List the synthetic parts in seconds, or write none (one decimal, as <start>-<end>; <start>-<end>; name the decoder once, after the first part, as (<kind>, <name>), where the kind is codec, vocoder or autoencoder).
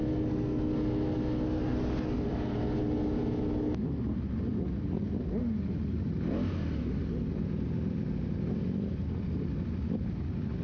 none